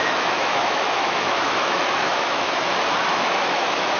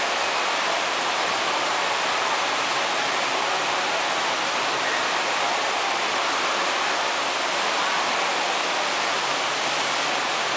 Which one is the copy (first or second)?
first